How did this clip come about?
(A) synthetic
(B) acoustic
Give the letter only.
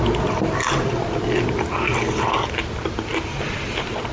B